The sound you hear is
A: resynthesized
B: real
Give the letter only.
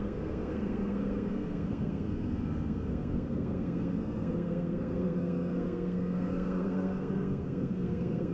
A